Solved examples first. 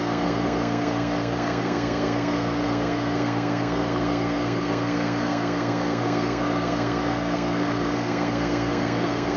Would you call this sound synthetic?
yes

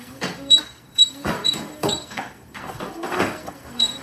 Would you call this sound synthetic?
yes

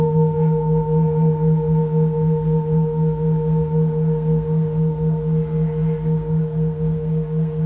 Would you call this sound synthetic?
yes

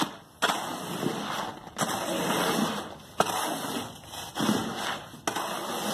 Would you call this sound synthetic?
no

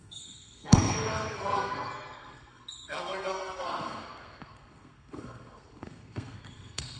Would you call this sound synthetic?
yes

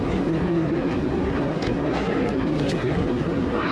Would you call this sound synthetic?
yes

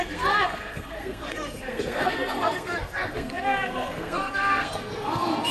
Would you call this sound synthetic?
yes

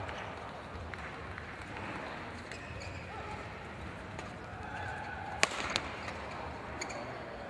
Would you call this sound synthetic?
no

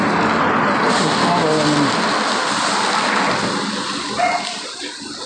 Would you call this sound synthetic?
no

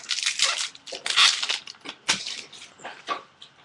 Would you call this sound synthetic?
no